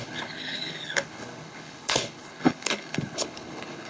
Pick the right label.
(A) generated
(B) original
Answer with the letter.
A